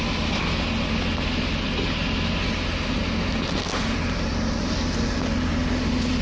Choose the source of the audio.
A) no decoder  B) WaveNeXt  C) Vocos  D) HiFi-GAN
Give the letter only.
A